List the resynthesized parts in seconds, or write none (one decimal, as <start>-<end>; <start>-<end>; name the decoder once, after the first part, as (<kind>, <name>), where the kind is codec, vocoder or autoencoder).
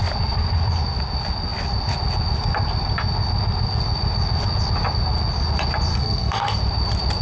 5.9-6.6 (codec, SNAC)